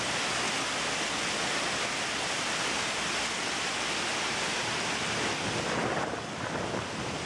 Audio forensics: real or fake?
real